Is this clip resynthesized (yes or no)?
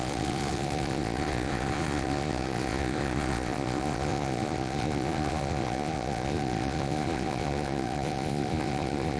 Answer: yes